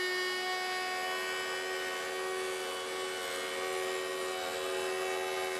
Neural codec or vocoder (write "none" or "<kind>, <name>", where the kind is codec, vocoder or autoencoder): none